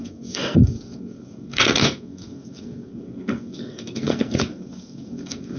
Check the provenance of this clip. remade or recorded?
remade